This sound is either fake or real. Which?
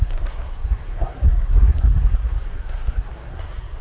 fake